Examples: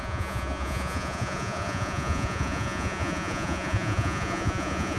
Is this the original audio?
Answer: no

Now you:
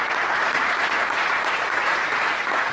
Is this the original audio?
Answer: no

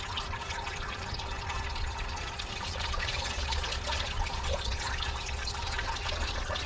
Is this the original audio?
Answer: no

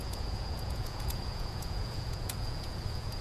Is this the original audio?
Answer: no